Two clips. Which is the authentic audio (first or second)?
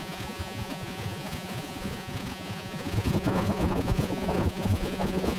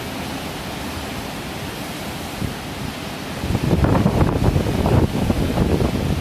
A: second